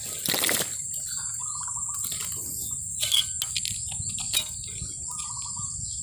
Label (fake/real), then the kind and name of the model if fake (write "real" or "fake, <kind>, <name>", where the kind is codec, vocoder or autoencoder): real